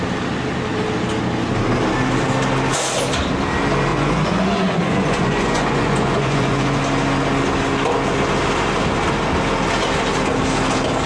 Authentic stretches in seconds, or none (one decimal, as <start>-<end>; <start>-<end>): 0.0-3.9; 6.8-11.1